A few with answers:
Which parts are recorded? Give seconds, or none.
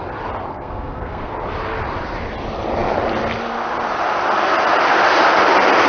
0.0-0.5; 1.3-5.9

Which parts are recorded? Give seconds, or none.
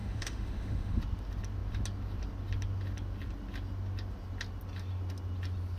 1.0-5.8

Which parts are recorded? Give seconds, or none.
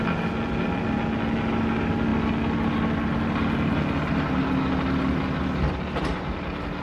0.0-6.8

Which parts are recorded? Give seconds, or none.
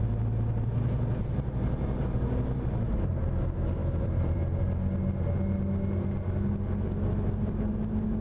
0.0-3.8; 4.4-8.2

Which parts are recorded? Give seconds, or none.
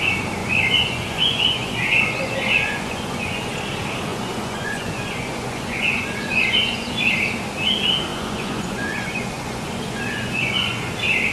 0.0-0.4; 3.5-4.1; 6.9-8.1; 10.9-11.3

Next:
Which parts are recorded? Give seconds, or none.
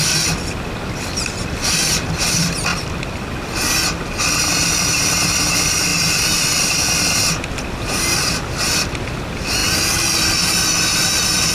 0.0-11.5